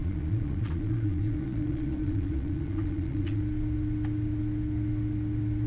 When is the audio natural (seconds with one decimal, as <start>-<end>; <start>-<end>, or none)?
3.4-5.7